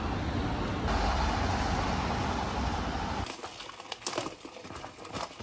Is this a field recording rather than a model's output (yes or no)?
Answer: yes